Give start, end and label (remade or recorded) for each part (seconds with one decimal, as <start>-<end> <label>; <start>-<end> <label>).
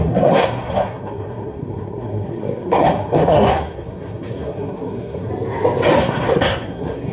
0.0-5.3 remade; 5.3-6.0 recorded; 6.0-7.1 remade